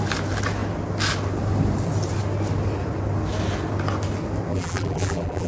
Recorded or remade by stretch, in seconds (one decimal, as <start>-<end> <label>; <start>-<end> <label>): 0.0-4.5 recorded; 4.5-5.5 remade